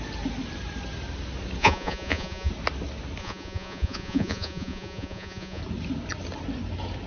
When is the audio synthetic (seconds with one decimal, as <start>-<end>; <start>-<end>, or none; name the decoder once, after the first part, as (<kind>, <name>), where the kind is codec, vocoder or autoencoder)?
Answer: 1.6-2.5 (vocoder, Vocos); 3.2-5.6